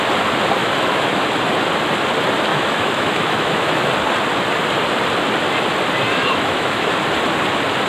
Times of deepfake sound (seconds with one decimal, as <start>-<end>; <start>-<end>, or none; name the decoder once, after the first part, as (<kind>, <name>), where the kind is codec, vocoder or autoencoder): 0.6-1.2 (autoencoder, DAC-VAE); 2.5-3.9; 6.1-6.9